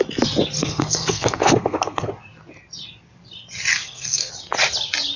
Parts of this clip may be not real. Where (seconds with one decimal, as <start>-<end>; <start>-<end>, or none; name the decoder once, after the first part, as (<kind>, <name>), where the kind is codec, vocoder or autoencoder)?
0.6-2.1 (codec, SNAC); 3.7-4.3